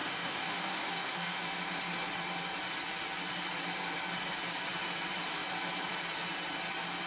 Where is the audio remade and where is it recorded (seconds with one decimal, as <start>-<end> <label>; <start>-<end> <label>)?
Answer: 0.0-1.4 remade; 1.4-7.1 recorded